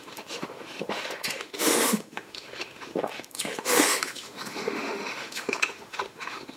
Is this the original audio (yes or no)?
no